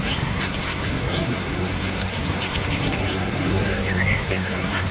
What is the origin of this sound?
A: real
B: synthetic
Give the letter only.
B